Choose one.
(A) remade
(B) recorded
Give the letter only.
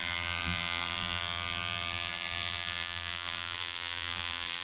A